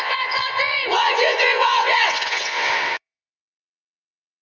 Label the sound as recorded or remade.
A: remade